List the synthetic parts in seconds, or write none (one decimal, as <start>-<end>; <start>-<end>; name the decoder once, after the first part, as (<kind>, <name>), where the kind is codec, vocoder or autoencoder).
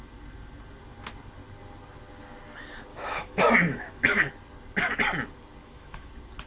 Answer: 2.9-4.3 (autoencoder, DAC-VAE); 5.6-6.1